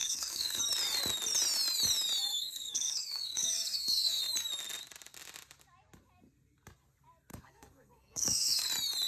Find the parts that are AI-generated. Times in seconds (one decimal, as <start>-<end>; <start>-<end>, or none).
0.0-0.6; 2.3-4.2; 7.3-8.7